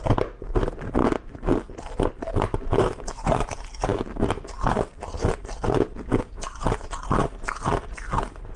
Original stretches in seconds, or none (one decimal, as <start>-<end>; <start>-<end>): 0.0-8.6